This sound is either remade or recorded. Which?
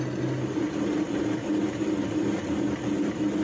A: recorded